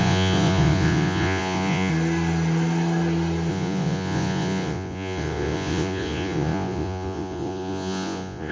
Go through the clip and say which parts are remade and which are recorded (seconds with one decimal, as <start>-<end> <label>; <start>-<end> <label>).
0.0-1.9 remade; 1.9-3.5 recorded; 3.5-8.5 remade